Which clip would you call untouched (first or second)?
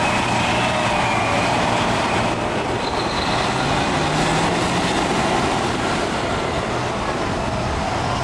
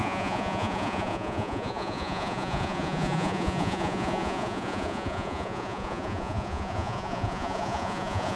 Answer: first